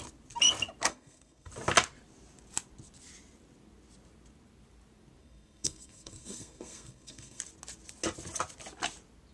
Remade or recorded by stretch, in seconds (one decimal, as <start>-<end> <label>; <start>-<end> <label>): 0.0-0.9 recorded; 0.9-1.5 remade; 1.5-5.2 recorded; 5.2-7.4 remade; 7.4-9.3 recorded